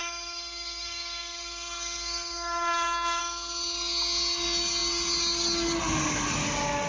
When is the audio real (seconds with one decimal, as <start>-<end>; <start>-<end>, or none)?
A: 3.2-6.9